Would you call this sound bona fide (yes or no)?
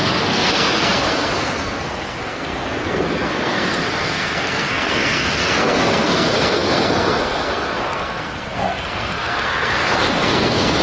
no